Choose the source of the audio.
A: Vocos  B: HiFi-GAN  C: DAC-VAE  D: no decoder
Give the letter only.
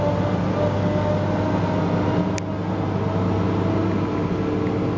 D